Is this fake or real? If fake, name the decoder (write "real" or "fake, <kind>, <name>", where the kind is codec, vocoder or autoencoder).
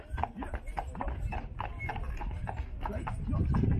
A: real